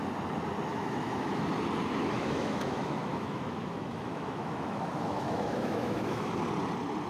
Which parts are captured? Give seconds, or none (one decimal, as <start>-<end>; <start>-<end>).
0.0-0.7; 1.5-2.0; 6.3-7.1